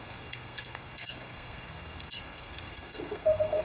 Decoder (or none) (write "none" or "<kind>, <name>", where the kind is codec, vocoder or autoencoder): codec, SNAC